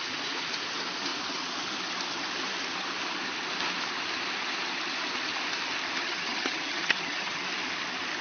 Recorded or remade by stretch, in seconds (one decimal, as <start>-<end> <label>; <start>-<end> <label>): 0.0-6.0 recorded; 6.0-7.4 remade; 7.4-8.2 recorded